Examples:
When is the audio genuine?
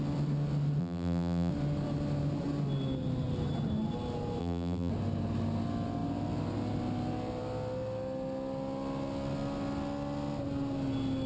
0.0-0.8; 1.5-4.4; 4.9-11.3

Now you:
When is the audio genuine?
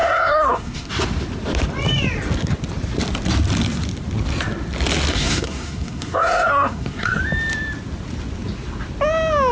0.9-5.1; 7.2-9.5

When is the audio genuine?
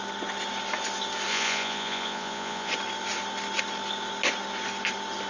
0.0-1.3; 2.7-5.3